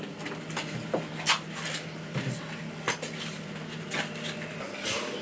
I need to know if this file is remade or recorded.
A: recorded